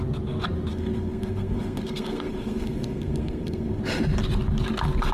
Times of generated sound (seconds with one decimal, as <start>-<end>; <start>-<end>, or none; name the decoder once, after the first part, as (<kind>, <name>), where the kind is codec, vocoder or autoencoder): 0.7-3.8 (codec, SNAC)